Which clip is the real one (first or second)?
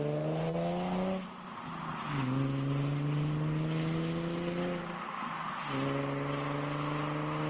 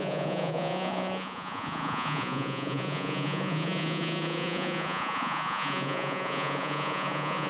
first